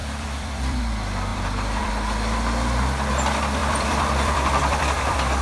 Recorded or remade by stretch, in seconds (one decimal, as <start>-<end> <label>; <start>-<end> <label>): 0.0-0.8 remade; 0.8-1.3 recorded; 1.3-1.9 remade; 1.9-3.6 recorded; 3.6-5.4 remade